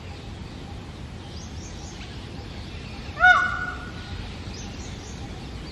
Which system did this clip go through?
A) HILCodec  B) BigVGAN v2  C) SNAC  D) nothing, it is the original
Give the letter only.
D